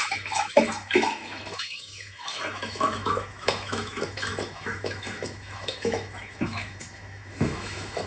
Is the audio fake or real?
fake